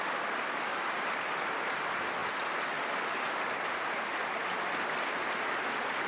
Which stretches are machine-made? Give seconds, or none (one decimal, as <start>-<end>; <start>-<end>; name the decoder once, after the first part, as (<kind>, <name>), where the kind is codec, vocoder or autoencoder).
none